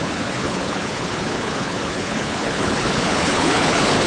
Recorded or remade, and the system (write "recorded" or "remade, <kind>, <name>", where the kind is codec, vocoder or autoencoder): remade, codec, HILCodec